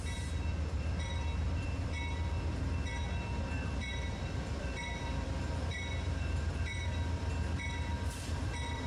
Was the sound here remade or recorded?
remade